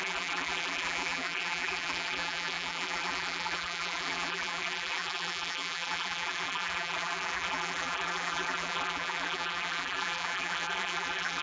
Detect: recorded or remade remade